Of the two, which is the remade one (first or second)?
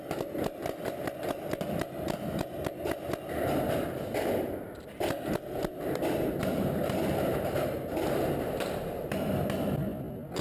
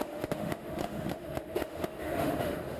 second